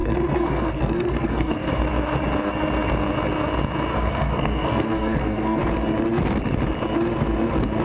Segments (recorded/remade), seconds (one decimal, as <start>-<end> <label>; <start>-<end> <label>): 0.0-1.7 remade; 1.7-3.9 recorded; 3.9-5.6 remade; 5.6-7.8 recorded

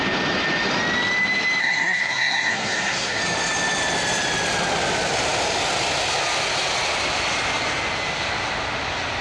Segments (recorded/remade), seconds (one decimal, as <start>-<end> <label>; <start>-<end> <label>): 0.0-1.6 recorded; 1.6-3.2 remade; 3.2-9.2 recorded

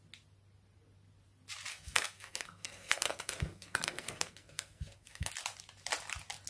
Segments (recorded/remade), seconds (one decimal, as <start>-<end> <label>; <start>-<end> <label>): 0.0-1.7 recorded; 1.7-5.3 remade; 5.3-6.5 recorded

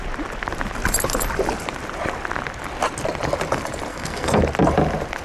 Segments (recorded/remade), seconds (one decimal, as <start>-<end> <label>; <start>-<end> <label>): 0.0-3.9 recorded; 3.9-4.4 remade; 4.4-5.2 recorded